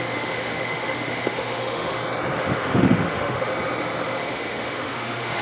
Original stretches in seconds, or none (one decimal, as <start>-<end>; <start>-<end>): 2.0-2.5; 3.5-4.2